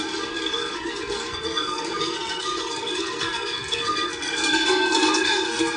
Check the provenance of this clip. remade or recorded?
remade